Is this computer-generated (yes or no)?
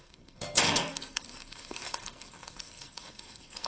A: yes